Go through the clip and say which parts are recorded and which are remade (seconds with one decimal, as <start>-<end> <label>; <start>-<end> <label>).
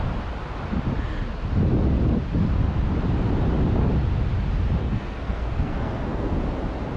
0.0-4.8 recorded; 4.8-6.4 remade; 6.4-7.0 recorded